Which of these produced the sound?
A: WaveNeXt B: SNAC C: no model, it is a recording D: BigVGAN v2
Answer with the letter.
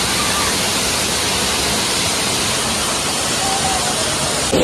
C